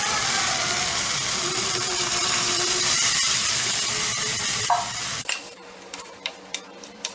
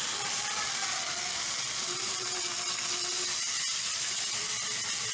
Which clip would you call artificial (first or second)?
first